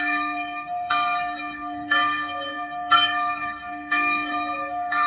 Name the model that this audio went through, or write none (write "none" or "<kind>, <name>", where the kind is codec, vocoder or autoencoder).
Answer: codec, SNAC